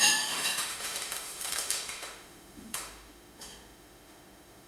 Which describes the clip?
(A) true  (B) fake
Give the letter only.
B